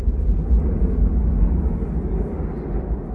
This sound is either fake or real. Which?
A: real